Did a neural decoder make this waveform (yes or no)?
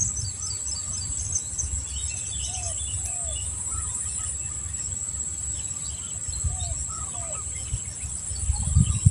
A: no